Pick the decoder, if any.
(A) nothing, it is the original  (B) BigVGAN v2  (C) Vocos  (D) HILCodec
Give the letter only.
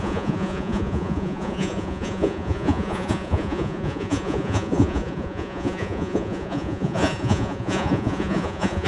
C